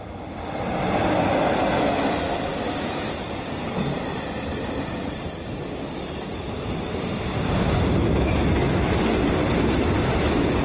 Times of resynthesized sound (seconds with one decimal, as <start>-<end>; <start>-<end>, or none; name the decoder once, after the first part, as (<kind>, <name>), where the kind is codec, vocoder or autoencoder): 2.5-3.1 (autoencoder, DAC-VAE); 8.0-9.0